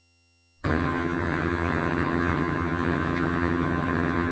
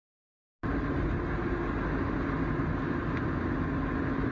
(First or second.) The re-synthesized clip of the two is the first